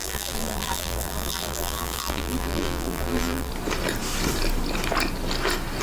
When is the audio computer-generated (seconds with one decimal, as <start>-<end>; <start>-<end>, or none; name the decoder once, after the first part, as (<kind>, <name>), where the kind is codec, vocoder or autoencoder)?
0.0-3.5 (vocoder, BigVGAN v2)

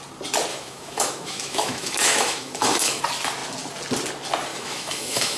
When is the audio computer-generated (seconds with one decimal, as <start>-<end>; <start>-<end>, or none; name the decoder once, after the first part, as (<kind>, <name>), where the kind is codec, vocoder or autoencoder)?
0.5-3.0 (autoencoder, DAC-VAE); 4.5-5.4